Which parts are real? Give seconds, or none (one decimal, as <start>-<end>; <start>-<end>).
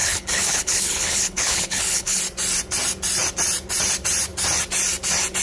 2.2-5.4